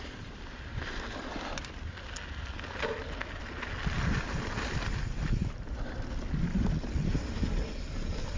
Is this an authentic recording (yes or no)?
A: yes